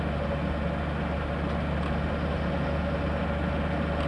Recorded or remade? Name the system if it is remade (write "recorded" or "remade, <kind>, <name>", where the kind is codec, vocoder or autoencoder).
recorded